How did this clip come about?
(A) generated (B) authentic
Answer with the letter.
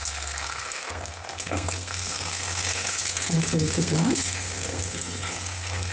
A